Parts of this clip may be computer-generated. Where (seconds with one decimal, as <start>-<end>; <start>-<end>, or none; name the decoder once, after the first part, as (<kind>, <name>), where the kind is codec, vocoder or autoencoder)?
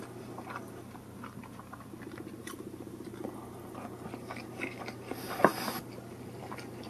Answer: none